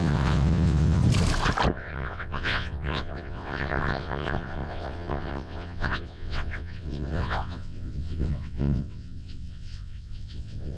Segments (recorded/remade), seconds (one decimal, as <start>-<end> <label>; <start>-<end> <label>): 0.0-1.0 remade; 1.0-1.7 recorded; 1.7-10.8 remade